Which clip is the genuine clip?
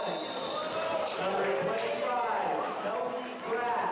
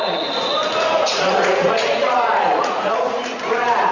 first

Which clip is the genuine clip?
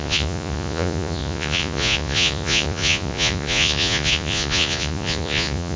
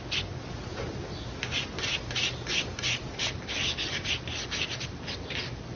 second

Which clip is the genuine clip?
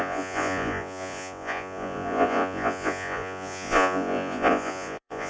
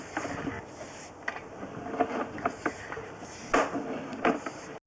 second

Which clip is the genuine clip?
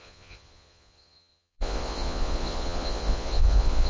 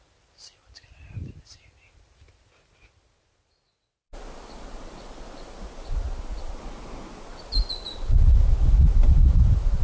second